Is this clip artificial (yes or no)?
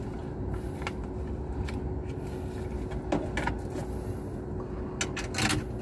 no